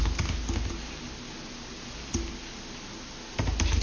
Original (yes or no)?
yes